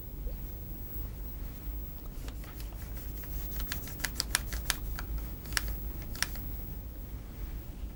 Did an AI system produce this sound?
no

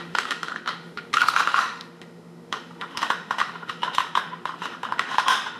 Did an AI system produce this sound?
yes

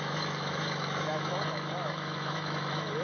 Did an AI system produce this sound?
yes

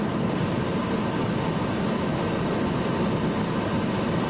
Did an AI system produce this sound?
no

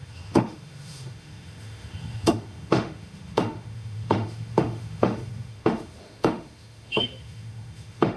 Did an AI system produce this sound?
yes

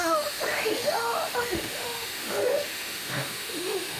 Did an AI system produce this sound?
yes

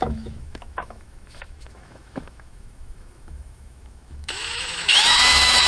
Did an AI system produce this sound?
yes